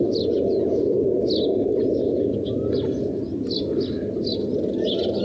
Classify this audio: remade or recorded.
recorded